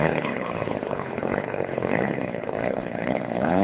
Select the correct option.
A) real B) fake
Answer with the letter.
B